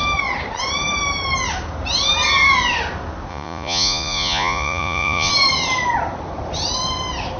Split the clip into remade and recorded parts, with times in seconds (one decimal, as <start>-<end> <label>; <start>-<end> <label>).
0.0-3.3 recorded; 3.3-5.3 remade; 5.3-7.4 recorded